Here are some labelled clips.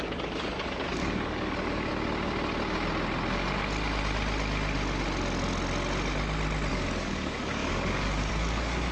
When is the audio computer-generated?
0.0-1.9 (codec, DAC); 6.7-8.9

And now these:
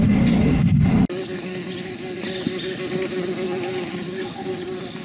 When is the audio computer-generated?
none

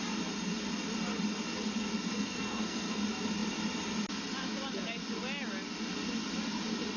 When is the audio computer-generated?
2.1-3.0 (codec, SNAC)

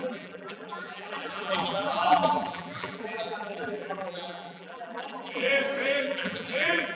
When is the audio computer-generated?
0.0-5.5 (vocoder, BigVGAN v2); 6.0-7.0

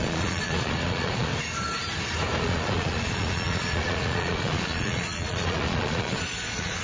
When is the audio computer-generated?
0.0-1.3 (vocoder, Vocos); 2.4-6.8

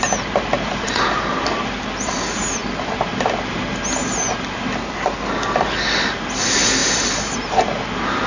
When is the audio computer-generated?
none

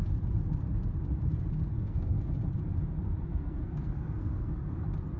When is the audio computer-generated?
1.7-2.3 (codec, SNAC); 3.3-4.5

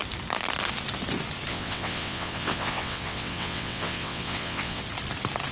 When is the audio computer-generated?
1.5-4.8 (vocoder, WaveNeXt)